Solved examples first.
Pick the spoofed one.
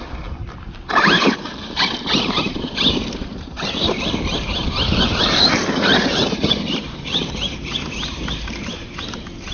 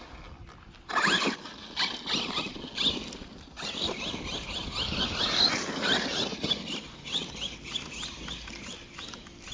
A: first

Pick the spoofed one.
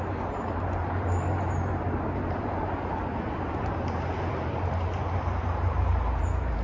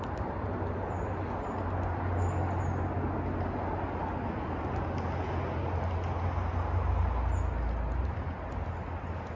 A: first